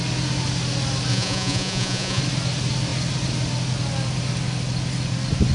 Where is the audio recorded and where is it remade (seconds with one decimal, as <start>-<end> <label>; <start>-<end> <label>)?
0.0-1.1 recorded; 1.1-2.2 remade; 2.2-5.5 recorded